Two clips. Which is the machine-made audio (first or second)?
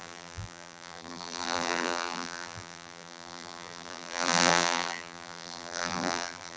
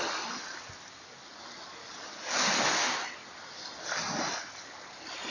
first